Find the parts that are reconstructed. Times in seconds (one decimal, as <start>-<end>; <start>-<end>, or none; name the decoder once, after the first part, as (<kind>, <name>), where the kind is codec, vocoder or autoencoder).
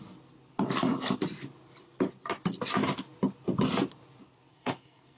4.5-5.2 (codec, SNAC)